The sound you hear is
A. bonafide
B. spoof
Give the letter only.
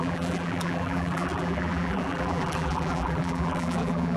B